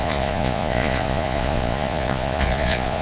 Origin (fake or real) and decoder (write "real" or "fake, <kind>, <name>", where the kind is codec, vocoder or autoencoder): fake, vocoder, Vocos